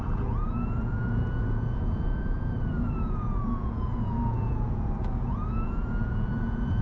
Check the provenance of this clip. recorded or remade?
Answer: remade